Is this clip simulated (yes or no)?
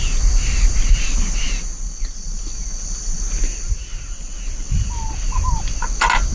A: no